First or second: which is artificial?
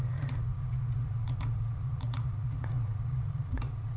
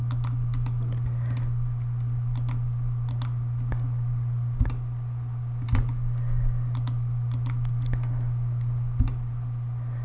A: first